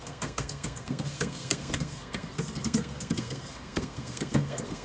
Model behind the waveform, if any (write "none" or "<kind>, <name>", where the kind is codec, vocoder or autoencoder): codec, SNAC